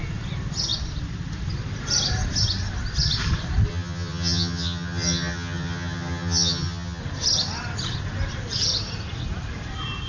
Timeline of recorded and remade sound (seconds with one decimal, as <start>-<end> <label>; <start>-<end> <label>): 0.0-3.7 recorded; 3.7-7.0 remade; 7.0-10.1 recorded